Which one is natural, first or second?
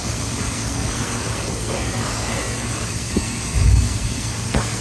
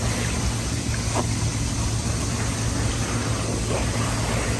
second